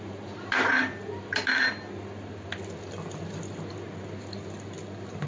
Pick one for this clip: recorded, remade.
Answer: recorded